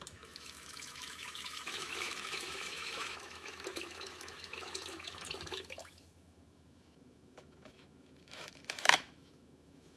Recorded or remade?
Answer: remade